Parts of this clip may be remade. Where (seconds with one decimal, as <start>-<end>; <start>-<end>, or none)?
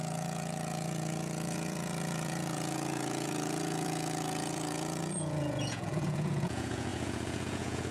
0.0-7.9